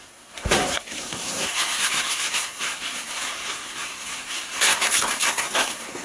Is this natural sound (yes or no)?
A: no